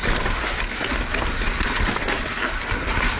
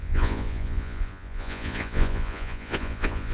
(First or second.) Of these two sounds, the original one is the first